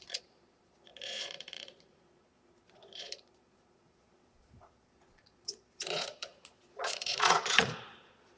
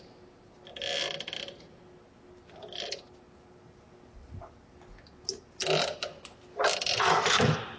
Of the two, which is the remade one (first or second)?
first